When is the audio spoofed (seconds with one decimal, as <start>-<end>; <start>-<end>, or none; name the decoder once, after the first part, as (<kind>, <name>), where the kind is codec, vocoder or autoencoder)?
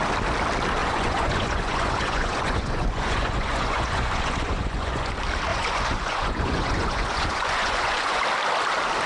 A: 0.8-5.1 (vocoder, Vocos); 5.5-8.2